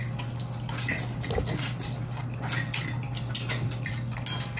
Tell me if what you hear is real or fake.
real